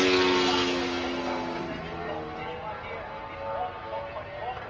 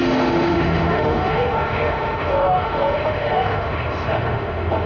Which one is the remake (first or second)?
second